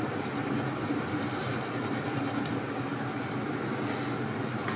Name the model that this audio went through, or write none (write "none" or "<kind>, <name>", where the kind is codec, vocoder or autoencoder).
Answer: none